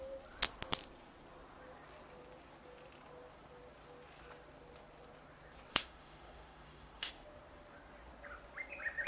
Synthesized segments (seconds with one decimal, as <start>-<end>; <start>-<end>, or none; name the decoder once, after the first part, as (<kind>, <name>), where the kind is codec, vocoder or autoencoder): 5.7-7.1 (autoencoder, DAC-VAE)